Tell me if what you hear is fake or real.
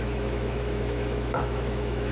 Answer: fake